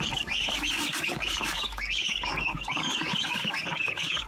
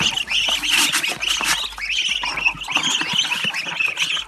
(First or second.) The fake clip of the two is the first